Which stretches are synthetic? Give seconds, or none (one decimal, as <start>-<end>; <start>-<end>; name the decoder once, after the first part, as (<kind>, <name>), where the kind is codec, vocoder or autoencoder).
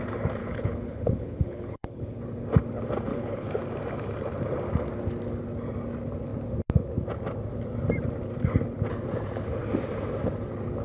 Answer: 0.4-2.0 (codec, HILCodec); 3.1-3.6